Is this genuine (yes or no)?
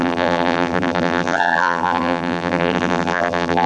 no